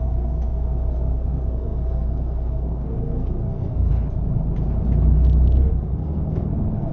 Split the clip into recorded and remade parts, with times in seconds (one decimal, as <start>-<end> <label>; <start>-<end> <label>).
0.0-3.9 remade; 3.9-5.7 recorded; 5.7-6.9 remade